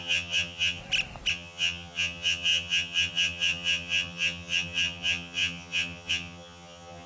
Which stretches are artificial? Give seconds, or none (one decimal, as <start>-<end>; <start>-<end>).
0.0-0.8; 1.3-7.1